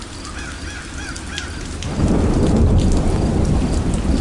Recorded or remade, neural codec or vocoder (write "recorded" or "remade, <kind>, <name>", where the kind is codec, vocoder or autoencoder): recorded